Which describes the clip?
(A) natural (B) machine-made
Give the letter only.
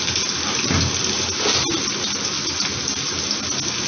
A